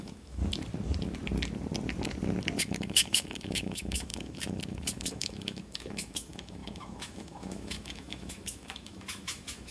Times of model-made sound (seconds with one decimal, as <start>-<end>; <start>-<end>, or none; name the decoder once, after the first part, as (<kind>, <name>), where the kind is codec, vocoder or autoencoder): 0.0-0.4 (autoencoder, DAC-VAE); 2.6-9.7